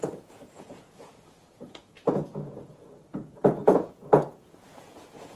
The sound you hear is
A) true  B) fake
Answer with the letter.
B